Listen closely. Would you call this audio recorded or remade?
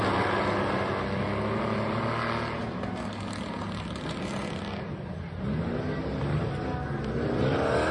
recorded